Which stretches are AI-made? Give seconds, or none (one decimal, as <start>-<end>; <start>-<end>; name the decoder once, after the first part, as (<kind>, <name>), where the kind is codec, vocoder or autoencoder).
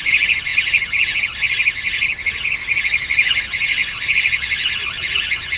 none